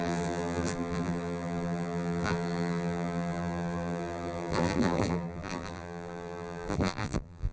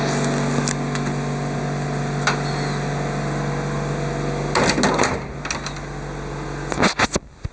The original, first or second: second